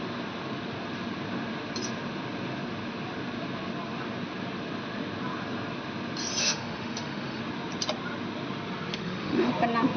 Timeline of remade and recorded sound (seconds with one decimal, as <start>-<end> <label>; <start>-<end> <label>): 0.0-6.4 recorded; 6.4-7.4 remade; 7.4-8.9 recorded; 8.9-9.5 remade; 9.5-10.0 recorded